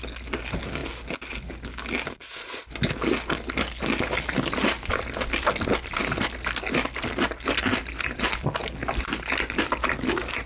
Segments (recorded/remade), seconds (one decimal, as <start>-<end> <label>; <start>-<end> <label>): 0.0-10.5 recorded